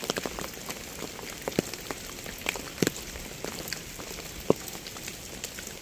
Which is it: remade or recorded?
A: recorded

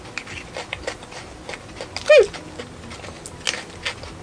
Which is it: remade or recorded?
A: recorded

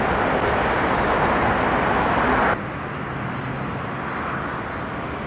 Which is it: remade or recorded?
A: recorded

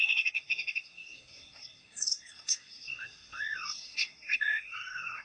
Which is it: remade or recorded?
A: remade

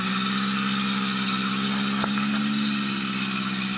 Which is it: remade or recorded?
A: recorded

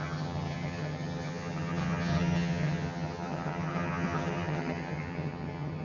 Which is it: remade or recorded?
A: remade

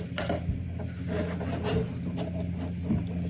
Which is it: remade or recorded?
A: recorded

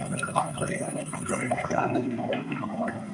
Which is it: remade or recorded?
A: remade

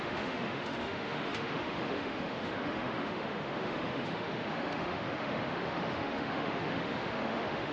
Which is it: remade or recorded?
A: remade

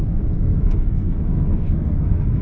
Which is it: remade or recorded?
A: remade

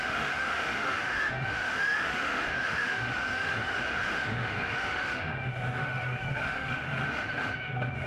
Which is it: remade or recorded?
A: remade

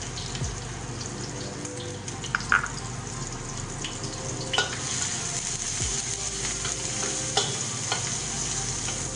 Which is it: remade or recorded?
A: recorded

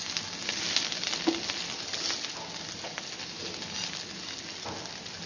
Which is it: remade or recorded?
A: recorded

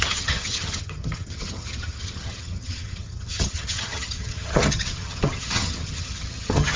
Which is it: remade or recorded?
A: remade